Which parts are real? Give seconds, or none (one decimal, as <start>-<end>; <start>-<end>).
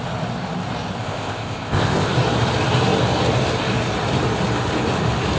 0.0-1.0; 2.1-5.4